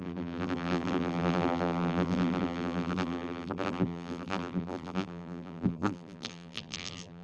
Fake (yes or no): yes